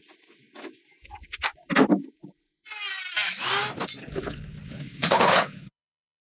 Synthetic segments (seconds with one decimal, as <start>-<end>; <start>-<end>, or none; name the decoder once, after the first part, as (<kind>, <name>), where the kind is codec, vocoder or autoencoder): 4.0-6.2 (codec, HILCodec)